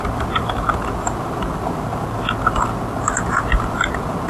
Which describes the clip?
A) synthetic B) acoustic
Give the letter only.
B